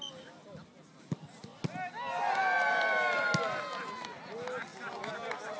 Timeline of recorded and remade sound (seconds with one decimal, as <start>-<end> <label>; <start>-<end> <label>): 0.0-5.6 recorded